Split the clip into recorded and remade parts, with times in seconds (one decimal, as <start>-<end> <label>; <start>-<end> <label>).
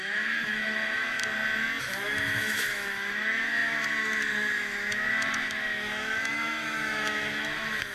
0.0-1.2 remade; 1.2-1.8 recorded; 1.8-7.9 remade